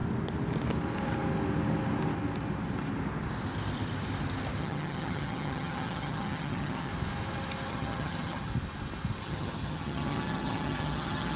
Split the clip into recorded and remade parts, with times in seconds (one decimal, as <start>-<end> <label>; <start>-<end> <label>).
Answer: 0.0-4.6 recorded; 4.6-6.9 remade; 6.9-7.7 recorded; 7.7-8.5 remade; 8.5-9.2 recorded; 9.2-11.4 remade